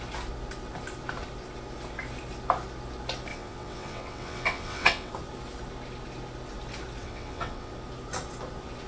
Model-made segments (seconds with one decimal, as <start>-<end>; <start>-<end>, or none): 3.3-5.1; 7.0-7.7